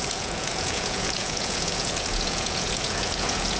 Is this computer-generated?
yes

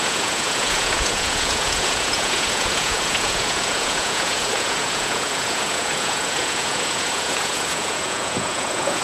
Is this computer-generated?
yes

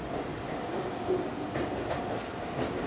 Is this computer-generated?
no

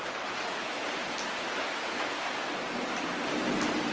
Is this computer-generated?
no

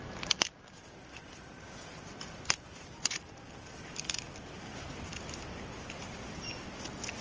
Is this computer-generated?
no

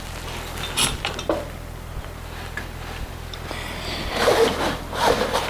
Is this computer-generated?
no